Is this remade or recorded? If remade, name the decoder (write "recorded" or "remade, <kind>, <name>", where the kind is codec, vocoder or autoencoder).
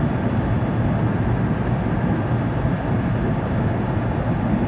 recorded